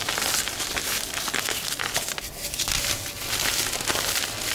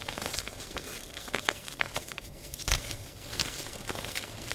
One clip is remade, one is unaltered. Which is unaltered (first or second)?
first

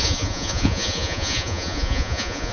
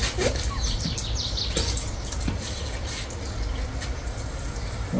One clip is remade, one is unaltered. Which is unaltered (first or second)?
second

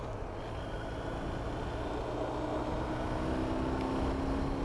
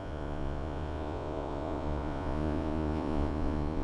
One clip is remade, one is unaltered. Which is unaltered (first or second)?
first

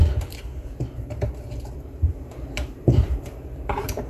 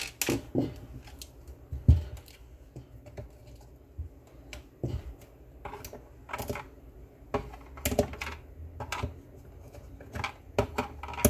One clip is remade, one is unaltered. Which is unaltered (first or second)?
second